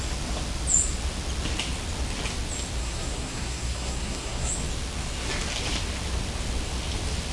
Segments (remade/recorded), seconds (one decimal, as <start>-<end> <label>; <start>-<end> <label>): 0.0-2.8 recorded; 2.8-4.5 remade; 4.5-7.3 recorded